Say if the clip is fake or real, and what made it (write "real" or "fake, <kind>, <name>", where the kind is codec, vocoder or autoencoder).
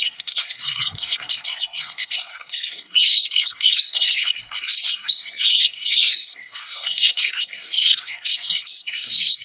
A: fake, codec, SNAC